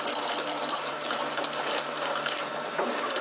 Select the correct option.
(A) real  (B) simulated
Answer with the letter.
B